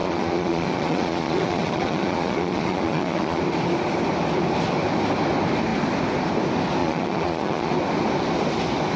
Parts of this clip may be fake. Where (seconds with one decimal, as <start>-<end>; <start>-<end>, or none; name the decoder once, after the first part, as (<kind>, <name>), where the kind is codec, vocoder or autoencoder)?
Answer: 0.0-3.4 (vocoder, Vocos); 6.8-7.7